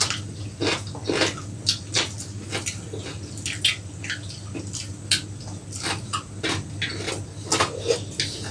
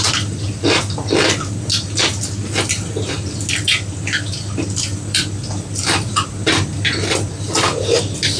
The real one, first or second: first